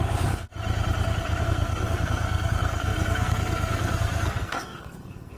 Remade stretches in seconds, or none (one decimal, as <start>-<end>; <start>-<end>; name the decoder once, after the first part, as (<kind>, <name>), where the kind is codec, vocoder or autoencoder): 0.0-0.5 (codec, SNAC); 1.4-5.4